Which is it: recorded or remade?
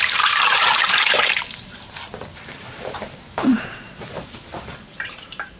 remade